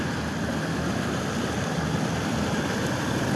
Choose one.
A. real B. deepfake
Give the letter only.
A